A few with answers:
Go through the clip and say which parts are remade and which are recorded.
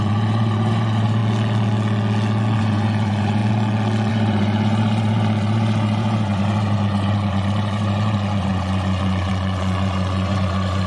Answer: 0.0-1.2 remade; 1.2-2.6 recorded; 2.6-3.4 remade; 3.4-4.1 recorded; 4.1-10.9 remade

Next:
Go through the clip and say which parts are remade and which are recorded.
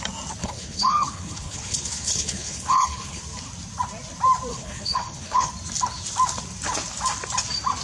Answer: 0.0-0.4 recorded; 0.4-3.2 remade; 3.2-4.5 recorded; 4.5-5.5 remade; 5.5-7.8 recorded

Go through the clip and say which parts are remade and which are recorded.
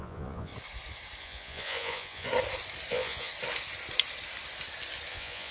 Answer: 0.0-0.5 remade; 0.5-1.2 recorded; 1.2-2.3 remade; 2.3-2.9 recorded; 2.9-3.3 remade; 3.3-5.1 recorded; 5.1-5.5 remade